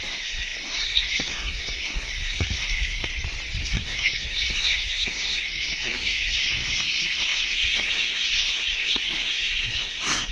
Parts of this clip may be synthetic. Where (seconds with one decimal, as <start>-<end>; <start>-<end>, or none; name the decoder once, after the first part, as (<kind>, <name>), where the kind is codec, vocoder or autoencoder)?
0.0-3.1 (codec, SNAC); 3.6-10.3